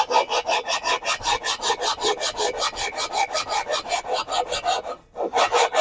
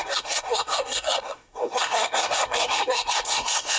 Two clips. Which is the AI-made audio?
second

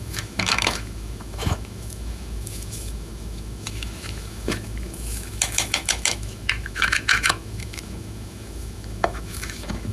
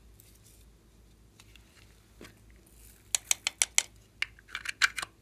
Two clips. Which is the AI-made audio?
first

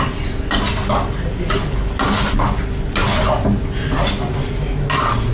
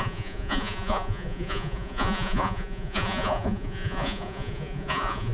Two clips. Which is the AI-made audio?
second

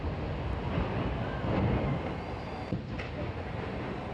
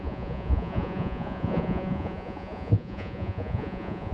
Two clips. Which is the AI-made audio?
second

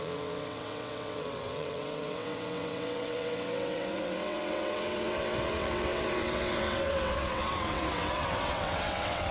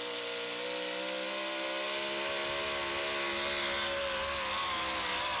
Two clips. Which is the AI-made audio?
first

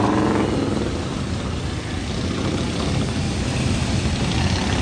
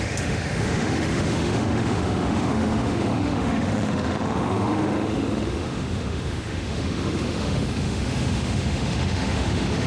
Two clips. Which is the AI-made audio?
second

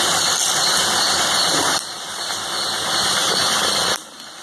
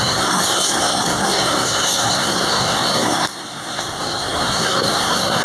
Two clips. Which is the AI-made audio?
second